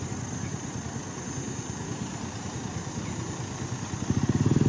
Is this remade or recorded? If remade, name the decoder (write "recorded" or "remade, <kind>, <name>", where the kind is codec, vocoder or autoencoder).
recorded